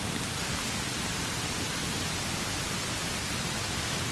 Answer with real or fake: real